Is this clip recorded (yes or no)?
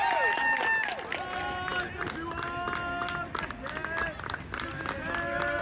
yes